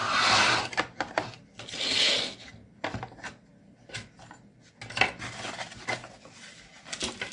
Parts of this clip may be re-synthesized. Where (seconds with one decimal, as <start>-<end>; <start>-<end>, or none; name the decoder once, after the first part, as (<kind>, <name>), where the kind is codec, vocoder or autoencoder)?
none